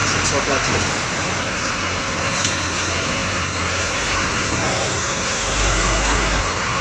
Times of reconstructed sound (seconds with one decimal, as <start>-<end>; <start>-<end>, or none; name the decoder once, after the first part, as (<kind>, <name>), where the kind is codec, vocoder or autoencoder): 1.4-6.8 (codec, SNAC)